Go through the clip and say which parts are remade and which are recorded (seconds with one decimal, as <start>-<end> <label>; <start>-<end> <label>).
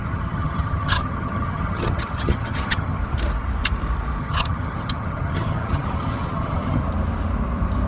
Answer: 0.0-3.0 remade; 3.0-4.2 recorded; 4.2-6.8 remade; 6.8-7.9 recorded